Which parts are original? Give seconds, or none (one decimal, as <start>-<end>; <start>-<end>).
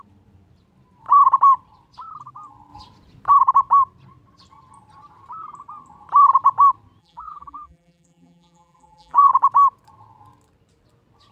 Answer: 0.0-7.0; 9.3-11.3